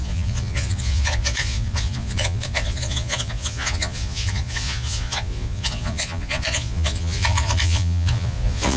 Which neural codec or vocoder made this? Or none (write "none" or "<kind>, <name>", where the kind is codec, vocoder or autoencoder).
vocoder, Vocos